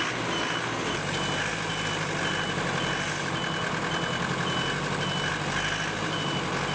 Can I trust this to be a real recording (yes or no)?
yes